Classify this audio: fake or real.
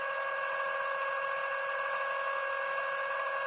real